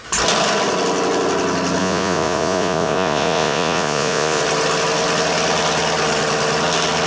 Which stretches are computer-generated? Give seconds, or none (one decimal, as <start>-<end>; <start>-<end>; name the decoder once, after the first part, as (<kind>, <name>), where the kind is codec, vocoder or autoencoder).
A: 1.8-4.4 (vocoder, Vocos)